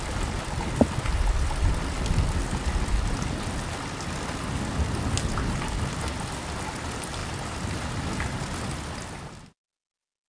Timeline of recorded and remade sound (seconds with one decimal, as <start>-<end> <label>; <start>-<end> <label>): 0.0-10.3 recorded